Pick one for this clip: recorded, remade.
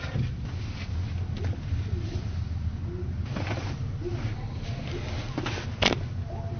recorded